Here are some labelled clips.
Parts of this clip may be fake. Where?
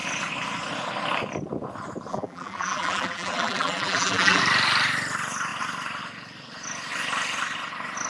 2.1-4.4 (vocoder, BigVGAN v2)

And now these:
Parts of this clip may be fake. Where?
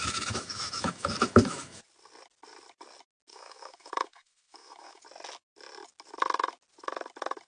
0.0-1.8 (autoencoder, DAC-VAE); 3.3-5.0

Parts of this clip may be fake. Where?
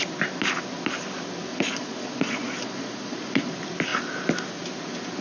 1.5-3.5 (vocoder, Vocos)